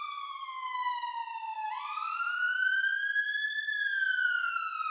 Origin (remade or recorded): recorded